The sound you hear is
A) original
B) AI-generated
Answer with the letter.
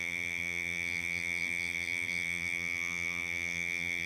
B